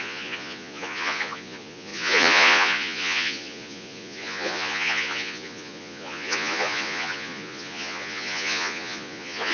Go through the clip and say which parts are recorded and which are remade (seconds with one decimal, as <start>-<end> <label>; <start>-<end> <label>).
0.0-9.5 remade